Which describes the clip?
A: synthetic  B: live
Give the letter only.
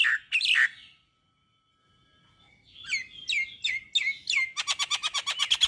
B